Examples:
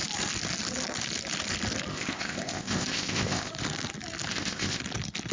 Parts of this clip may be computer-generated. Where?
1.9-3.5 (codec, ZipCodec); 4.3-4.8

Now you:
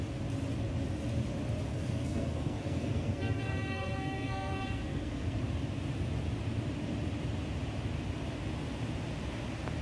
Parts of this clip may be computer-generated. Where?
1.7-5.4 (codec, SNAC)

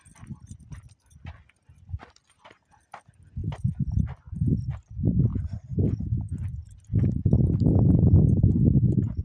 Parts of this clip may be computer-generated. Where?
3.4-4.4 (vocoder, BigVGAN v2); 5.3-9.2

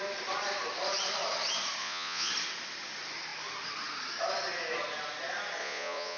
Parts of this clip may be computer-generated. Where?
1.8-2.3 (vocoder, Vocos); 5.6-6.2

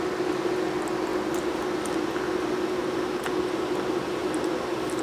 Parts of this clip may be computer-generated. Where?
none

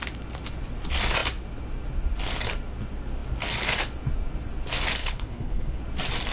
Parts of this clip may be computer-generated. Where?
5.0-5.8 (codec, HILCodec)